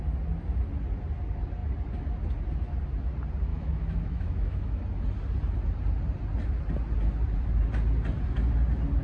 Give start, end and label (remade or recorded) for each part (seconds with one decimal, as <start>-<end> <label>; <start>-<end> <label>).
0.0-3.5 recorded; 3.5-4.8 remade; 4.8-9.0 recorded